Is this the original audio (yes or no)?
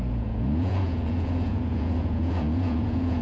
no